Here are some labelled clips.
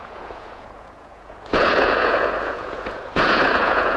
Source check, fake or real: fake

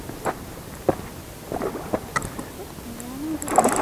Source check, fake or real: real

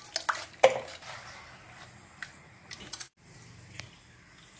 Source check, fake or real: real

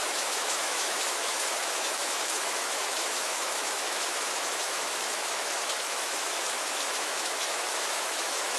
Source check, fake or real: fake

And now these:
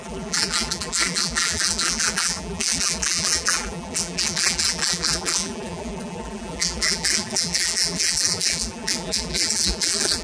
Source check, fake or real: fake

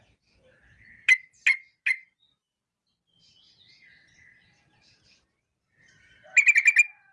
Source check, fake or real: real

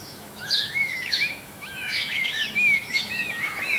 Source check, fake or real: fake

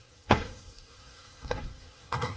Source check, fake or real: fake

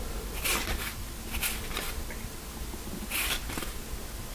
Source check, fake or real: real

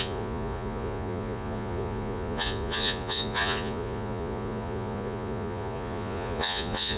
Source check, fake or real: fake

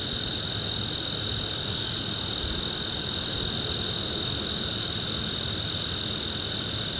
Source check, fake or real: real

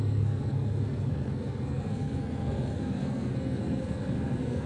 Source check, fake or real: fake